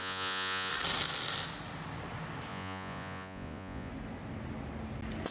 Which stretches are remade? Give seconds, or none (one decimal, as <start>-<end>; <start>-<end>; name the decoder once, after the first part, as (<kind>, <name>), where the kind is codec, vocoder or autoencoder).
0.0-0.7 (vocoder, Vocos); 2.5-3.9